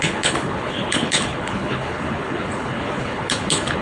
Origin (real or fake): fake